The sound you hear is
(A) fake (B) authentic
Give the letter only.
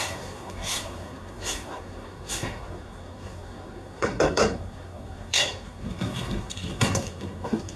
A